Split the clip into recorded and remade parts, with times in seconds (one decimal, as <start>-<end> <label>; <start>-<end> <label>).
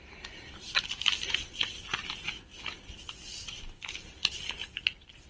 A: 0.0-5.3 recorded